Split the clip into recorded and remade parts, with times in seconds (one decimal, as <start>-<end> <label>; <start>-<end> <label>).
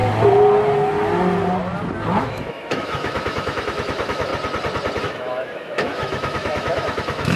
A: 0.0-2.2 recorded; 2.2-4.3 remade; 4.3-5.0 recorded; 5.0-7.4 remade